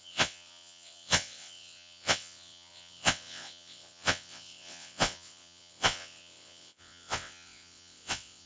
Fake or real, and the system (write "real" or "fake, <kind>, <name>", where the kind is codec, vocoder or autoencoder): fake, vocoder, WaveNeXt